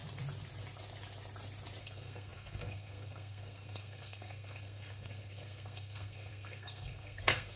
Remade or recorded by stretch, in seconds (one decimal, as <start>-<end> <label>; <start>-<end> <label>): 0.0-1.8 recorded; 1.8-7.6 remade

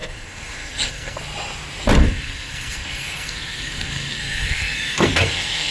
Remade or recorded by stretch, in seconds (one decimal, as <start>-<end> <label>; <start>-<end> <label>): 0.0-1.2 remade; 1.2-2.0 recorded; 2.0-5.7 remade